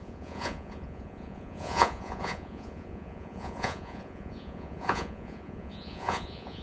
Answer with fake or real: fake